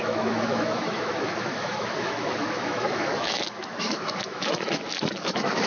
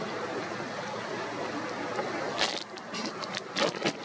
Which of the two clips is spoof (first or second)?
first